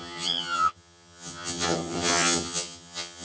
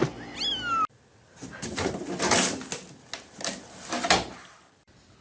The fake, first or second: first